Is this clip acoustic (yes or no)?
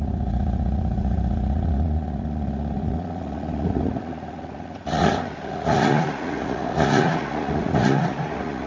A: no